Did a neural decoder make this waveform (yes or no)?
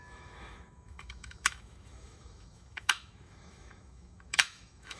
yes